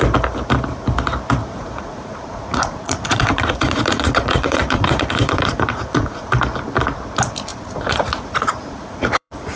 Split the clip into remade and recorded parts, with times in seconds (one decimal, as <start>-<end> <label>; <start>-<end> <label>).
0.0-1.4 recorded; 1.4-6.3 remade; 6.3-7.5 recorded; 7.5-9.6 remade